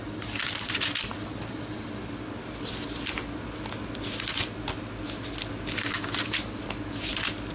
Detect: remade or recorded recorded